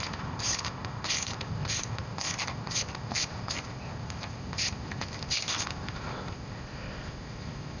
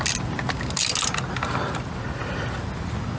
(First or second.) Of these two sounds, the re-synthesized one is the first